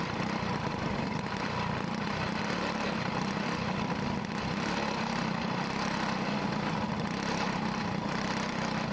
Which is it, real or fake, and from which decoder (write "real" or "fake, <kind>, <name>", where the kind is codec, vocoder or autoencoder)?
fake, vocoder, BigVGAN v2